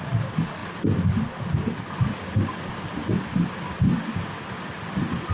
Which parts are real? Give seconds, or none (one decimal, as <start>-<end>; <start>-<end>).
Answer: 0.0-5.3